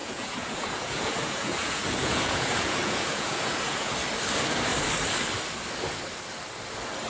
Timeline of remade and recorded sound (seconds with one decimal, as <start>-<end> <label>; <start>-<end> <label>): 0.0-3.9 remade; 3.9-7.1 recorded